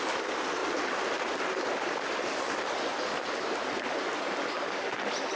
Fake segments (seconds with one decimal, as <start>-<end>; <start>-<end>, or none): none